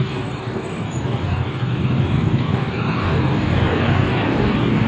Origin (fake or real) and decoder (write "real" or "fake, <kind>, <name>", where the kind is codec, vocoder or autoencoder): fake, codec, DAC